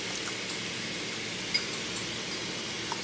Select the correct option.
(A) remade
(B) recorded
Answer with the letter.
B